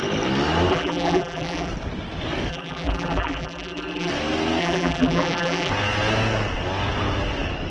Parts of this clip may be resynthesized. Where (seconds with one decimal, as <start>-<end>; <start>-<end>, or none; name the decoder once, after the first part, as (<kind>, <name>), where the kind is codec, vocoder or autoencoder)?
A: 0.7-1.7 (vocoder, BigVGAN v2); 2.5-4.1; 4.6-5.7